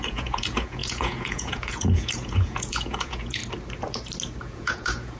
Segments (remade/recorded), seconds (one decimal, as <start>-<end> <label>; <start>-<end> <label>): 0.0-3.4 remade; 3.4-4.4 recorded; 4.4-5.2 remade

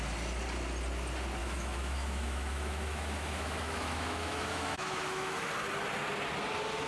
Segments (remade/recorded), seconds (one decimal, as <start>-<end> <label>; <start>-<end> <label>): 0.0-1.4 recorded; 1.4-5.5 remade; 5.5-6.9 recorded

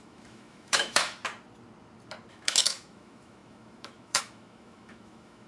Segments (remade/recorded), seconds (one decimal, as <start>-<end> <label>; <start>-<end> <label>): 0.0-1.2 remade; 1.2-2.3 recorded; 2.3-5.5 remade

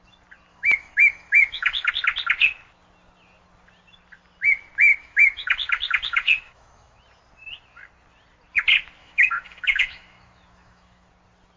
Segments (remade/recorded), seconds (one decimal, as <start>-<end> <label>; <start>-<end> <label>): 0.0-0.5 recorded; 0.5-1.9 remade; 1.9-4.9 recorded; 4.9-7.0 remade; 7.0-9.0 recorded; 9.0-11.1 remade; 11.1-11.6 recorded

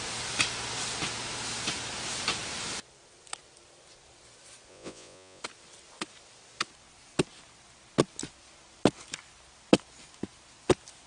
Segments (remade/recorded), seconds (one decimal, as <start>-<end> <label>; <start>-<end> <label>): 0.0-4.7 recorded; 4.7-5.4 remade; 5.4-11.1 recorded